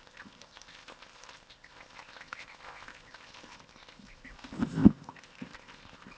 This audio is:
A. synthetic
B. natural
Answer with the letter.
A